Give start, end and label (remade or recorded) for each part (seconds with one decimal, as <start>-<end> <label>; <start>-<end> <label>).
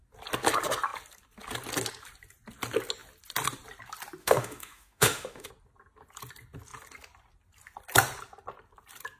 0.0-4.2 recorded; 4.2-5.5 remade; 5.5-9.2 recorded